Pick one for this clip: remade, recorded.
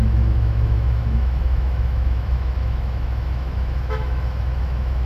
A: remade